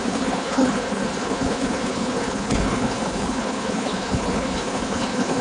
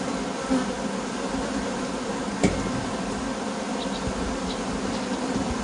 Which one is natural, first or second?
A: second